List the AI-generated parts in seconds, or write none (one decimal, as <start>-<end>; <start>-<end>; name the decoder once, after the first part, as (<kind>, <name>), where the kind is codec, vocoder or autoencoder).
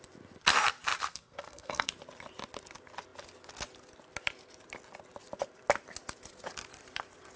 1.1-1.9 (codec, SNAC)